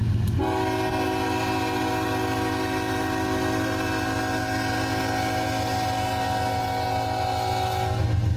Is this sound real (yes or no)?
yes